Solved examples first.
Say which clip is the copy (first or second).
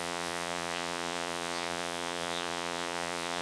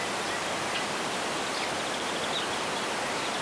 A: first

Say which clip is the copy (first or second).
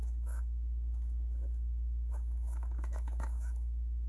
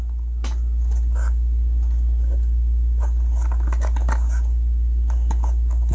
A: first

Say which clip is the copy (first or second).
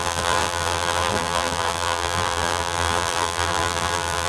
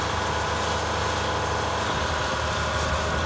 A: first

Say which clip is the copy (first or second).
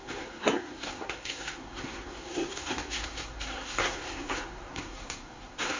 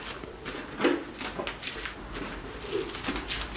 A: first